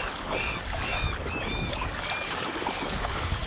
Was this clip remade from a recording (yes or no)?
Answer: yes